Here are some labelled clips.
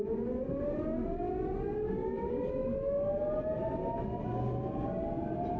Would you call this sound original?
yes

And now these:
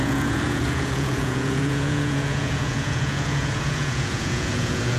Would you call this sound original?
no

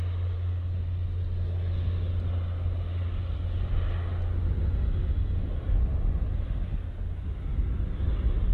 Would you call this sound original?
yes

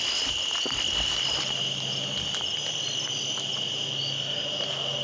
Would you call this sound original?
yes